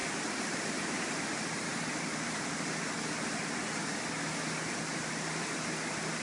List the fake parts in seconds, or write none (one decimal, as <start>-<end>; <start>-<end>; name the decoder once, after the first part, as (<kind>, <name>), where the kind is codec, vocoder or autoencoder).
0.0-1.2 (vocoder, BigVGAN v2)